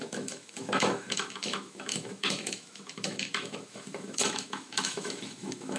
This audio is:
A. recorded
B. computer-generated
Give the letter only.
B